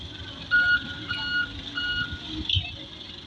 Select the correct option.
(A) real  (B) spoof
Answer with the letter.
A